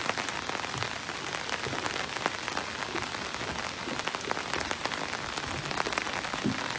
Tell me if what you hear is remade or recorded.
recorded